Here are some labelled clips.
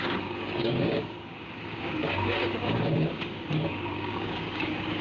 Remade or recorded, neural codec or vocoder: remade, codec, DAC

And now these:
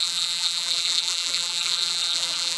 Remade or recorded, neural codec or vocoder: remade, vocoder, BigVGAN v2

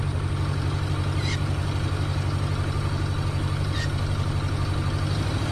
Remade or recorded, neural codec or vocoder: recorded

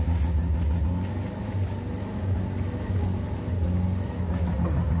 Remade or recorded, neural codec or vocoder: recorded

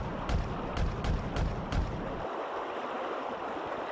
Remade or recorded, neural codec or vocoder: recorded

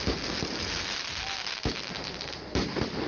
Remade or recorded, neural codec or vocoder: recorded